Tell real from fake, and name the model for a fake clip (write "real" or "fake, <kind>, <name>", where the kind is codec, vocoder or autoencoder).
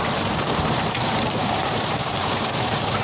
fake, vocoder, BigVGAN v2